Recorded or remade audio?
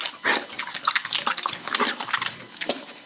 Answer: recorded